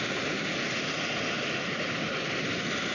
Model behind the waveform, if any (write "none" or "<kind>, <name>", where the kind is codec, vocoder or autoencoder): none